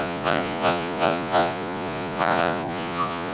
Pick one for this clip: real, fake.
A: fake